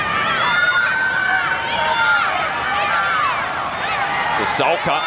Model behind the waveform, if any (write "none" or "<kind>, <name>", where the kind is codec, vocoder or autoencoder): none